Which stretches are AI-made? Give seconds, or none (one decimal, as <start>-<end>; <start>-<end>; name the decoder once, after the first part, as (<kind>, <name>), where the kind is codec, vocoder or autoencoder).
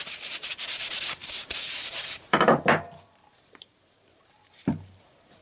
0.0-5.4 (vocoder, BigVGAN v2)